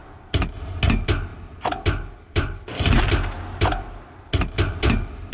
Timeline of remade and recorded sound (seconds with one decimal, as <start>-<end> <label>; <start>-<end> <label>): 0.0-0.8 remade; 0.8-1.3 recorded; 1.3-4.3 remade; 4.3-5.3 recorded